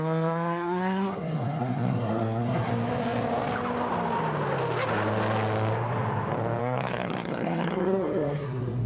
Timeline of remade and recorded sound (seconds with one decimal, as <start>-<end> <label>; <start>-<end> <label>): 0.0-2.7 remade; 2.7-6.6 recorded; 6.6-8.9 remade

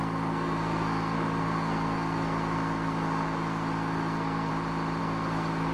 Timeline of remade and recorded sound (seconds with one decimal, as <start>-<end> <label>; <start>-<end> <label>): 0.0-4.5 remade; 4.5-5.0 recorded; 5.0-5.7 remade

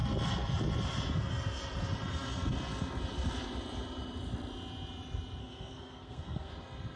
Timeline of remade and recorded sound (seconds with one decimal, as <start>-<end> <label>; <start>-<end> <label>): 0.0-5.4 recorded; 5.4-6.5 remade; 6.5-7.0 recorded

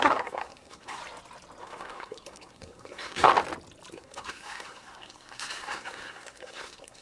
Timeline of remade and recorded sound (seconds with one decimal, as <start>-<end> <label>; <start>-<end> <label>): 0.0-1.0 remade; 1.0-1.6 recorded; 1.6-3.3 remade; 3.3-3.9 recorded; 3.9-7.0 remade

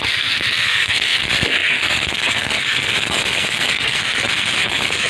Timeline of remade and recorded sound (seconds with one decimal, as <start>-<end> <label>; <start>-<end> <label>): 0.0-5.1 remade

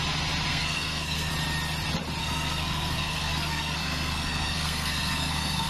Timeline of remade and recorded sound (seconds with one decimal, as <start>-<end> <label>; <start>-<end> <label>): 0.0-0.5 recorded; 0.5-1.3 remade; 1.3-2.2 recorded; 2.2-5.7 remade